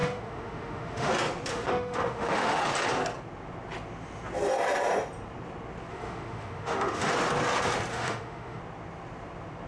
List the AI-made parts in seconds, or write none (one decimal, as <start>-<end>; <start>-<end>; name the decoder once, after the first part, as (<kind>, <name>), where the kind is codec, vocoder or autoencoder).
0.0-1.1 (autoencoder, DAC-VAE); 1.5-2.6; 5.9-7.1; 7.9-8.6